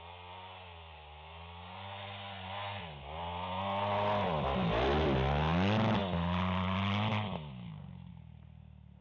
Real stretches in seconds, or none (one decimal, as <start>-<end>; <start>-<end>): 0.0-9.0